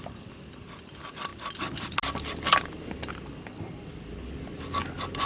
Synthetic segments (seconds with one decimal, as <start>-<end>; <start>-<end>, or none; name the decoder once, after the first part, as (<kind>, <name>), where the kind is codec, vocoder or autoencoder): none